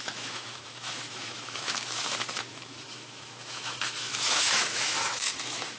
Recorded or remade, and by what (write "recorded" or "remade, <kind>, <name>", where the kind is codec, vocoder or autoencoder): remade, autoencoder, DAC-VAE